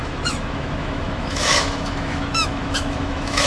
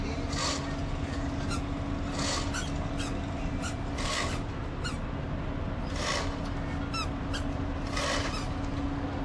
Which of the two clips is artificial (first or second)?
first